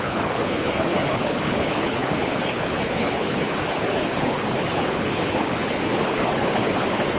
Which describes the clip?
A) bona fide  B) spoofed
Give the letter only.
B